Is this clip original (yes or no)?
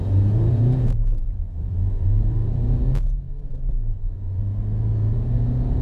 no